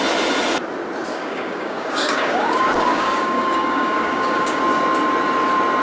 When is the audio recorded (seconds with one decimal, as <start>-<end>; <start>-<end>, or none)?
0.0-1.1; 4.6-5.8